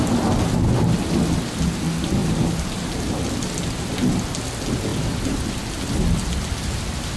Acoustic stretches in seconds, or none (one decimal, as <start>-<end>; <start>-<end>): 0.0-2.2; 3.2-7.2